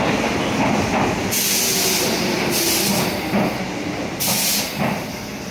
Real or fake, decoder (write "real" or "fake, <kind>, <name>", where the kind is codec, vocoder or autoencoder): real